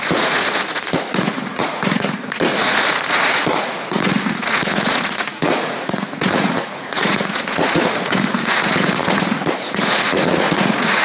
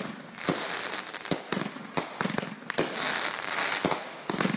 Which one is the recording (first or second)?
second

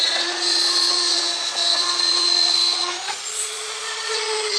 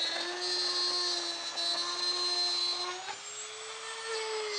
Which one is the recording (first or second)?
second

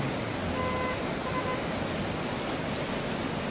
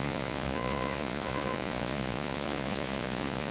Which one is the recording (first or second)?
first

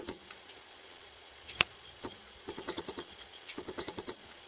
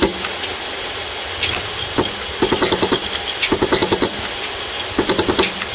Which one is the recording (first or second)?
second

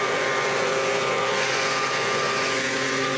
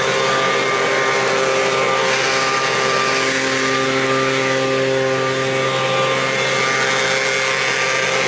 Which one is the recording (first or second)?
second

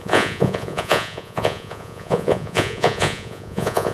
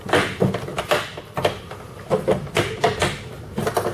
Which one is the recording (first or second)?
second